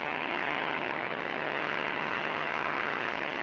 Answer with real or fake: fake